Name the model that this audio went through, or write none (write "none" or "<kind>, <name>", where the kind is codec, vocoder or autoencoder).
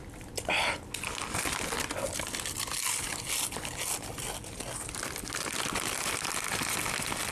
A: none